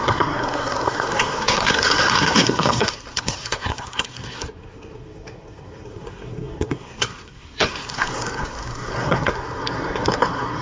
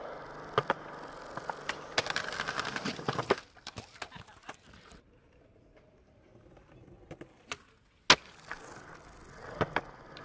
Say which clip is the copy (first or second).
first